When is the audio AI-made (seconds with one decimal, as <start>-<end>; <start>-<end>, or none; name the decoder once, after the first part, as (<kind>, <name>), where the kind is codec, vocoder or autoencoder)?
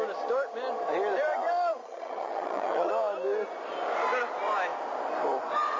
1.8-2.9 (vocoder, HiFi-GAN)